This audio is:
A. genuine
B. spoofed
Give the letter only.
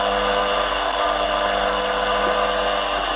A